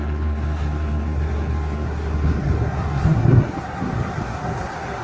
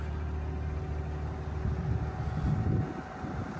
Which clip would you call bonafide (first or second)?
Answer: second